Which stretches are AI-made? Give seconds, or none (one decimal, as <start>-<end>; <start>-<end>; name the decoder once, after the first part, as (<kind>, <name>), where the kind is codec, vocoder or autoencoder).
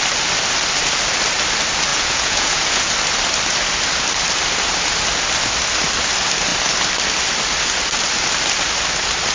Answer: 1.9-2.9 (vocoder, Vocos)